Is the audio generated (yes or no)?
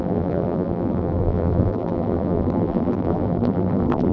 yes